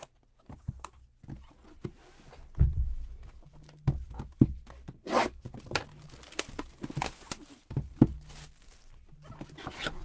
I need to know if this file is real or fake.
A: real